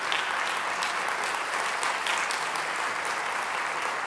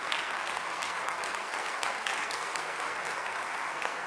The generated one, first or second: second